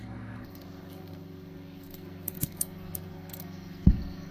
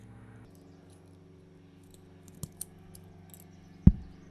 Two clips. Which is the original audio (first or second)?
second